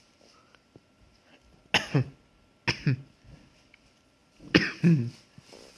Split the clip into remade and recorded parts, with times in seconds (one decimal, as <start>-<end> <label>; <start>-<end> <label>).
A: 0.0-5.8 recorded

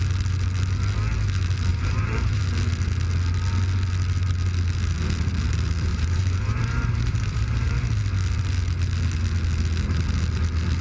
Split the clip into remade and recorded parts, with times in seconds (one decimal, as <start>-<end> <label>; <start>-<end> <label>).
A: 0.0-1.7 recorded; 1.7-2.4 remade; 2.4-5.9 recorded; 5.9-7.7 remade; 7.7-10.8 recorded

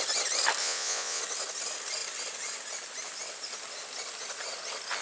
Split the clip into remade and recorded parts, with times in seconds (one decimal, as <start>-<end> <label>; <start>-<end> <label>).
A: 0.0-0.6 recorded; 0.6-1.2 remade; 1.2-5.0 recorded